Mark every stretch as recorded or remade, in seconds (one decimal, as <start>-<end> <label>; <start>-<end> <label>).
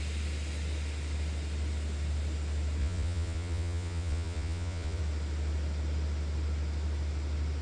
0.0-2.8 recorded; 2.8-5.0 remade; 5.0-7.6 recorded